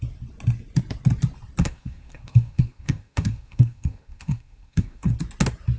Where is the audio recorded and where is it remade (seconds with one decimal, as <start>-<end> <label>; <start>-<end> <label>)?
0.0-1.6 recorded; 1.6-5.1 remade; 5.1-5.8 recorded